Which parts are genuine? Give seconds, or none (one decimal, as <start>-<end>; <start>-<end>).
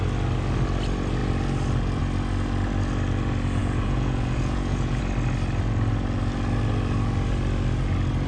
0.0-3.6; 5.0-8.3